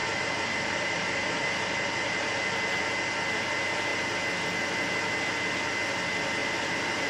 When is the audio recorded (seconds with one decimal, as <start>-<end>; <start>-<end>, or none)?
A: 2.3-6.4